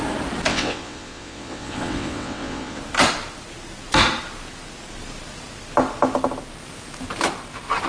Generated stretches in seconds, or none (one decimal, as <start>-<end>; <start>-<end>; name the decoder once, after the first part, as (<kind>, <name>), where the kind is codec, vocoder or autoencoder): 0.5-2.8 (vocoder, WaveNeXt)